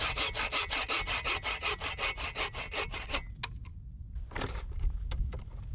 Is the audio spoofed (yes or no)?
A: no